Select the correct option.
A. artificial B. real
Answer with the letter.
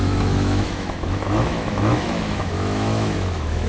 A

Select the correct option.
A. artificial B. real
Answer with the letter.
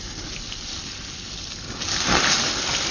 B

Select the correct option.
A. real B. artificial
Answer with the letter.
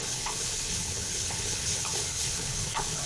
B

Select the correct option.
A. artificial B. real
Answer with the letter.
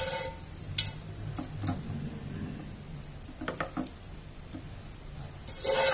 B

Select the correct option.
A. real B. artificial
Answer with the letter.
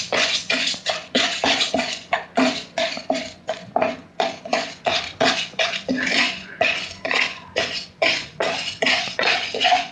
B